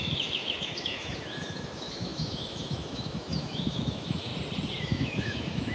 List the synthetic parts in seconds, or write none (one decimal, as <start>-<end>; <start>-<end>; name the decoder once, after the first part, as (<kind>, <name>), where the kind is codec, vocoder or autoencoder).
0.0-4.3 (autoencoder, DAC-VAE); 4.8-5.7